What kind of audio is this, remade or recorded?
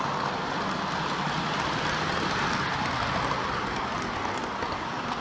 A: recorded